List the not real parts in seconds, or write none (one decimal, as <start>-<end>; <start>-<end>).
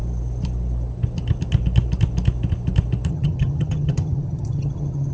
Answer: 3.1-5.1